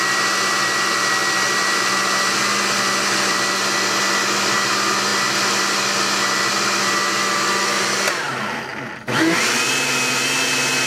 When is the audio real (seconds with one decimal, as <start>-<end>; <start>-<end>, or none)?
0.0-10.9